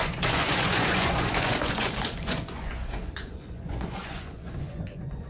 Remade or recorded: remade